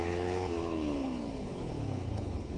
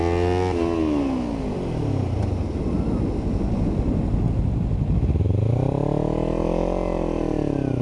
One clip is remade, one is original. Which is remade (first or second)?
first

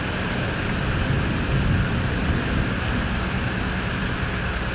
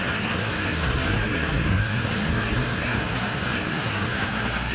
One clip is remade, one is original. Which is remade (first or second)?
second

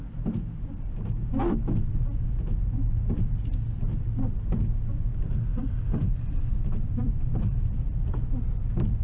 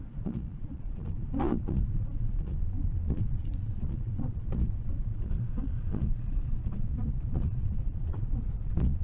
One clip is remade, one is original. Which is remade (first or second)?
second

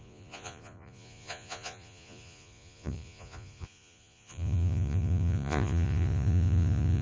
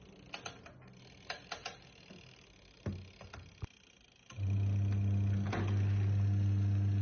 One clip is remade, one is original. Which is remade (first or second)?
first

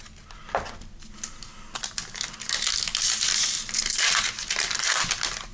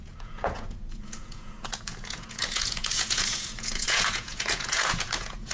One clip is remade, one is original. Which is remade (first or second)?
second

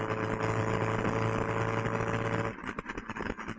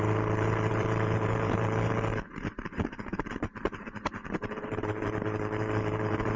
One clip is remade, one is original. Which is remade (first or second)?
second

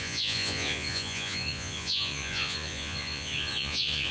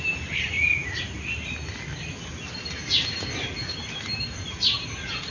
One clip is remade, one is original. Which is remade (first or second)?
first